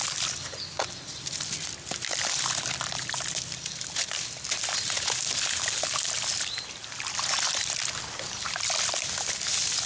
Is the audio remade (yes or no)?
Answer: no